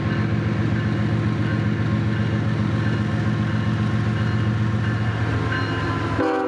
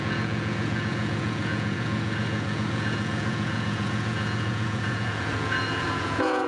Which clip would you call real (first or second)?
first